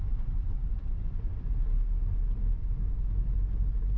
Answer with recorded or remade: recorded